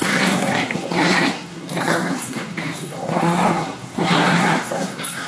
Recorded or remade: remade